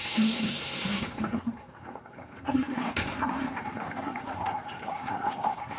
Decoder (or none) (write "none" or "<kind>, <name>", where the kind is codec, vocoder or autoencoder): codec, SNAC